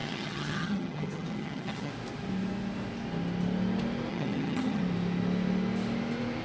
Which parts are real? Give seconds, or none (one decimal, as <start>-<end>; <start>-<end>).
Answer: 1.9-4.1; 4.8-6.4